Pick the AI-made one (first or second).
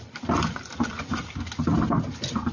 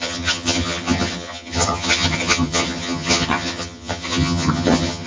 second